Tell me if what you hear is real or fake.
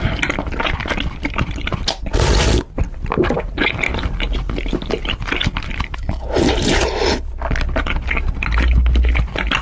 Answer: real